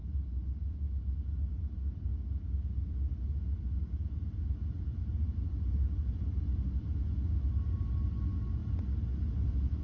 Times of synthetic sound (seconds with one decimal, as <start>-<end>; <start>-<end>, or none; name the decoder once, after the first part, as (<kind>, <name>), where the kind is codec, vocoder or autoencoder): 0.0-1.5 (vocoder, BigVGAN v2); 4.9-6.4